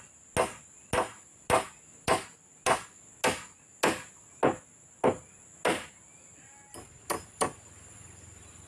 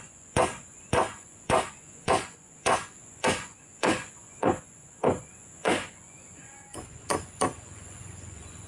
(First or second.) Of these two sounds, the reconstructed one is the second